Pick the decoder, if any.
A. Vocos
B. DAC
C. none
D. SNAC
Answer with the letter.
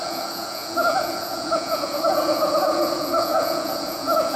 A